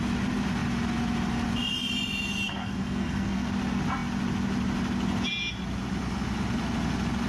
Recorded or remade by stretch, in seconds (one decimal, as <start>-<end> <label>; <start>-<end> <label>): 0.0-2.6 recorded; 2.6-3.5 remade; 3.5-7.3 recorded